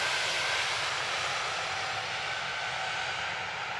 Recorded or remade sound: recorded